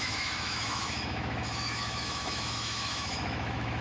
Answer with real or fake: fake